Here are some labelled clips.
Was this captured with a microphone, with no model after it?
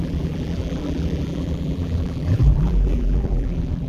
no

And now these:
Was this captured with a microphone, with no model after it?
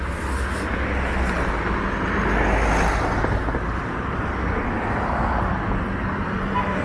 yes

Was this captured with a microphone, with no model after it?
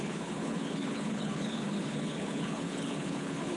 no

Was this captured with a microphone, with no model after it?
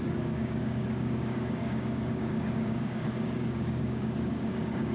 no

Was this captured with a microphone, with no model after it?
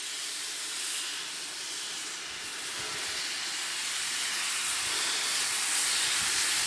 yes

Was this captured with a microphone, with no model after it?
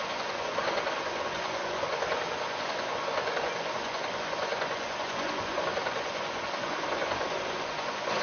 no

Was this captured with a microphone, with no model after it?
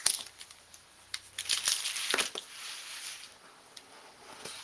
yes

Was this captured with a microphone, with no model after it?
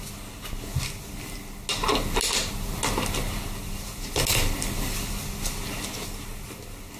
yes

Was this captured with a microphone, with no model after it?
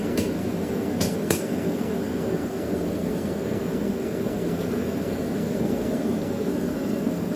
no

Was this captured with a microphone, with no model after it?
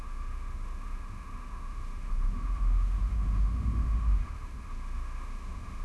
no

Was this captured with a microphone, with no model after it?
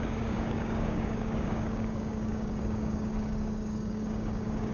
no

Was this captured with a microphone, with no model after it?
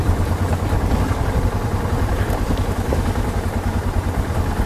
no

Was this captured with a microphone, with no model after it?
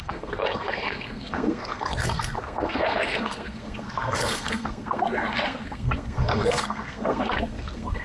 no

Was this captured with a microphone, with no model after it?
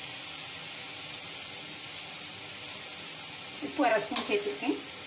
yes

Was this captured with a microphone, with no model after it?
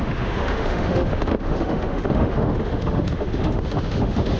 no